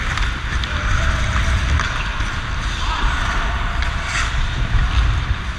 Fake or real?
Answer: real